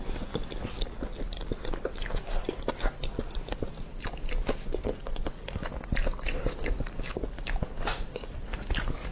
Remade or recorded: recorded